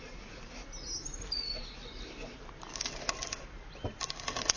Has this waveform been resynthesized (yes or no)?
no